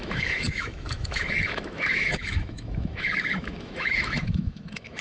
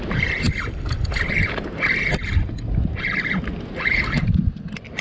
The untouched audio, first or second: second